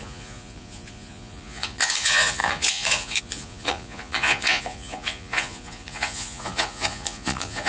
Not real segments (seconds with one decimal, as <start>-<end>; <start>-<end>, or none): 0.0-7.7